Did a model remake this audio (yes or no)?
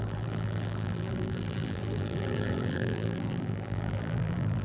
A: yes